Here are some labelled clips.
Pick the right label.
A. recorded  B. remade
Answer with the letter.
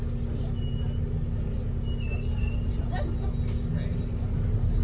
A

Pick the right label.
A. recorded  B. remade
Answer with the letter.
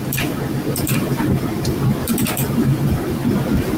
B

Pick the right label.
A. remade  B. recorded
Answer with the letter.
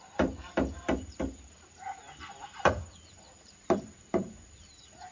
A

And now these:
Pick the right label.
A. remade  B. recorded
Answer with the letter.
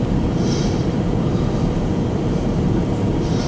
A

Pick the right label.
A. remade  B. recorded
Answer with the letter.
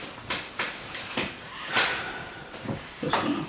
A